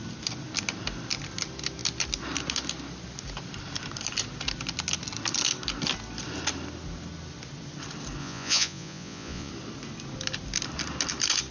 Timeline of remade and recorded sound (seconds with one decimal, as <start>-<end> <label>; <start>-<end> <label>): 0.0-8.2 recorded; 8.2-9.5 remade; 9.5-11.5 recorded